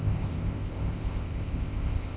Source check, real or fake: fake